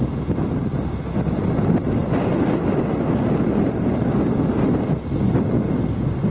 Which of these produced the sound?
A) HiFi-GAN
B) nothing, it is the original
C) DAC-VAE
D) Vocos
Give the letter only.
B